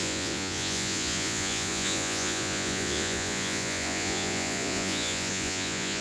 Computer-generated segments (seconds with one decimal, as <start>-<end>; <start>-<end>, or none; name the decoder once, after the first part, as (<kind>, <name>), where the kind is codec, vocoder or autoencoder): 0.0-6.0 (vocoder, Vocos)